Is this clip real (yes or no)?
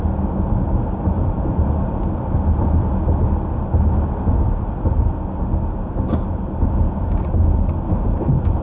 yes